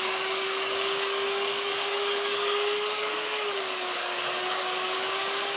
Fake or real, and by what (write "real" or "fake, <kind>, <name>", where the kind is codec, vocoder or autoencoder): fake, codec, DAC